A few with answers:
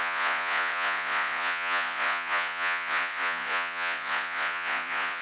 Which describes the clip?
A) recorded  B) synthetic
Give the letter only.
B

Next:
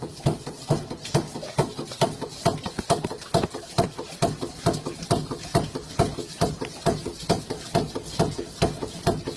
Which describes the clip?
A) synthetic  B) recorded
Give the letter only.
B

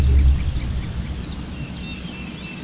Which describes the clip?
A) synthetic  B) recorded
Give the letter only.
B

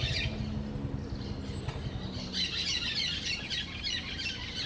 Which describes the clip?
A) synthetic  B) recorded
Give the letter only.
B